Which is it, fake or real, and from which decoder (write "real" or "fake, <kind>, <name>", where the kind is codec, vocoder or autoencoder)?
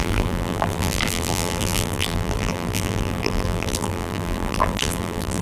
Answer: fake, vocoder, BigVGAN v2